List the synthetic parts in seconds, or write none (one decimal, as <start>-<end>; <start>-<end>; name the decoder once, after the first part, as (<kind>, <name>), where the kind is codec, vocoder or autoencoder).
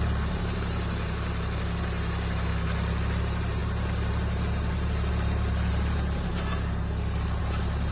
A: 0.0-2.5 (vocoder, BigVGAN v2); 3.2-6.3; 7.4-7.9